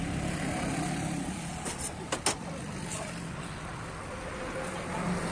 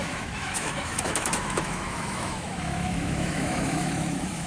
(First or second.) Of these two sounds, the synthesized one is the second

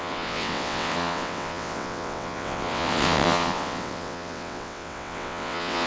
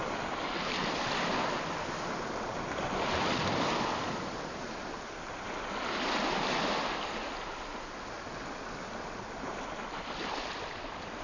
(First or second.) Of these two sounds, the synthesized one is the first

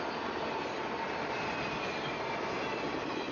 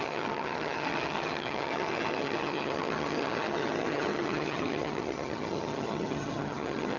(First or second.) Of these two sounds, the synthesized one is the second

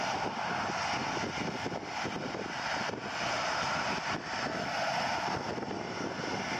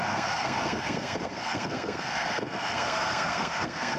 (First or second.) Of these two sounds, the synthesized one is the second